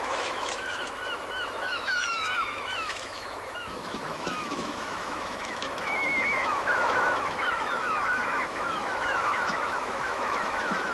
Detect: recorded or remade remade